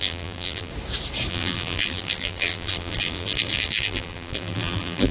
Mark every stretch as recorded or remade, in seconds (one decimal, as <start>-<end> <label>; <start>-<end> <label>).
0.0-0.7 remade; 0.7-1.3 recorded; 1.3-5.1 remade